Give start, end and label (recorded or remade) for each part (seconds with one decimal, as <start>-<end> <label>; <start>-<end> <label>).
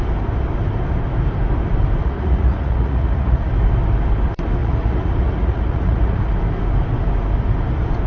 0.0-2.0 recorded; 2.0-3.5 remade; 3.5-4.6 recorded; 4.6-6.3 remade; 6.3-8.1 recorded